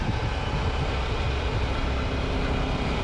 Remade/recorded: recorded